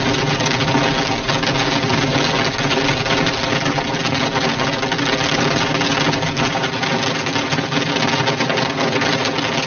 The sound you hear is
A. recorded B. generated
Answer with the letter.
A